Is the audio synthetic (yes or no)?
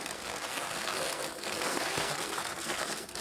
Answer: yes